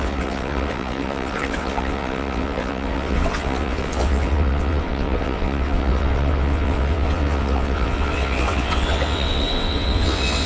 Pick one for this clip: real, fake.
fake